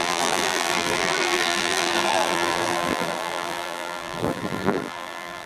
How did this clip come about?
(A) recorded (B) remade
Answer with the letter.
B